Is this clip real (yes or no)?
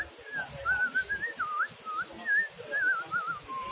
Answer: yes